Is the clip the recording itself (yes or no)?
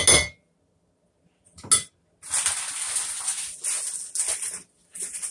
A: yes